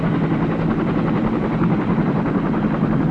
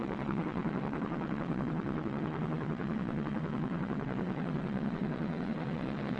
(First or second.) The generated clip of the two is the second